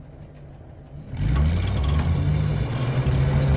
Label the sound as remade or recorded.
recorded